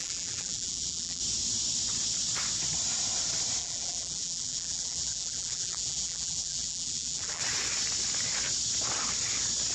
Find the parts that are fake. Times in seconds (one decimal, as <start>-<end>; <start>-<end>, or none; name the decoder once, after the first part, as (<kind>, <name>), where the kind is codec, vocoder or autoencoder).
0.0-1.2 (vocoder, BigVGAN v2); 3.6-7.4